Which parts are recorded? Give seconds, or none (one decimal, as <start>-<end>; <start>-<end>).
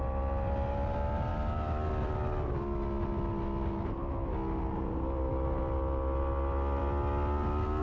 0.0-7.8